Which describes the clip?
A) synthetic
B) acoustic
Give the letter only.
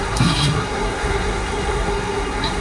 A